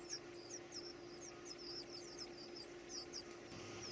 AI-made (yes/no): no